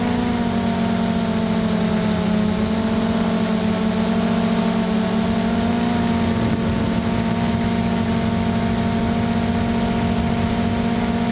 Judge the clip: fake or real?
real